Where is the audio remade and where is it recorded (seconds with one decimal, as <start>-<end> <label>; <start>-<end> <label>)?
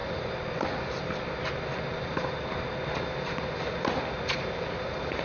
0.0-5.2 recorded